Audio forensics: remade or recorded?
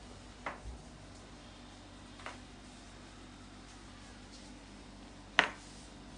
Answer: recorded